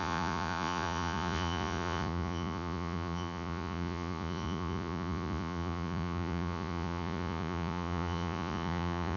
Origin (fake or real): fake